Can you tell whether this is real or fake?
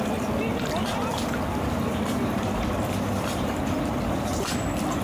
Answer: real